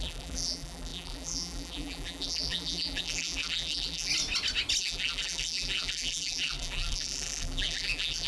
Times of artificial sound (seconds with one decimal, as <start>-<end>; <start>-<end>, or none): 0.0-4.1; 4.8-8.3